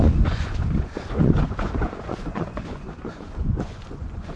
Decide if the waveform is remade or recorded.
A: remade